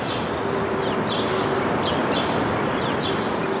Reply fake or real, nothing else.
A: real